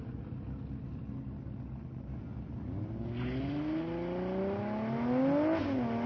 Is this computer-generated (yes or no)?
no